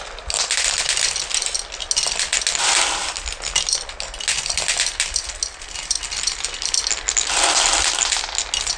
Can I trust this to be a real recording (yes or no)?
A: yes